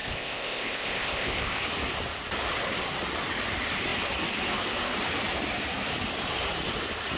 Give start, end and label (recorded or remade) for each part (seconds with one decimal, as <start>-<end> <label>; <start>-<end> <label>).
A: 0.0-1.6 remade; 1.6-7.2 recorded